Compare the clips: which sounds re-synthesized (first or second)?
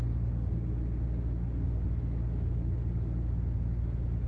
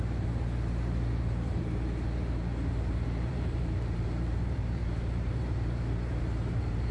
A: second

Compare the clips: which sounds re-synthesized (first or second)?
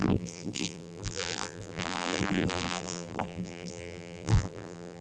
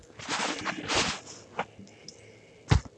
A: first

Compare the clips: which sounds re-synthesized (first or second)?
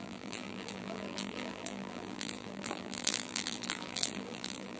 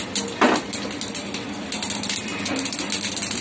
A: first